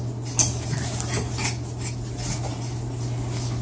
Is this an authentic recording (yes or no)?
yes